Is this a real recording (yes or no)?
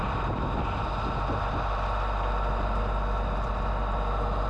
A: yes